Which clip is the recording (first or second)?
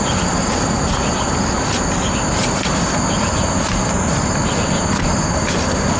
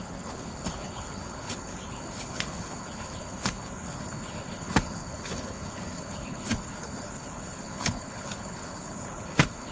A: first